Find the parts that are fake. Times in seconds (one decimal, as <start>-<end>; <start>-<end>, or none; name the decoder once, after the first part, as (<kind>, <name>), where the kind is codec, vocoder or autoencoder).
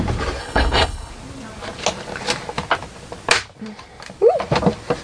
0.4-1.1 (codec, HILCodec)